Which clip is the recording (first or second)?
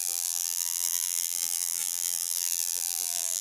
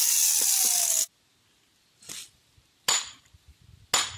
second